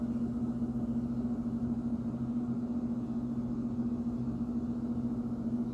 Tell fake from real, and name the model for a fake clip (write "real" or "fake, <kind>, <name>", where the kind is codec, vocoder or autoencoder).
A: real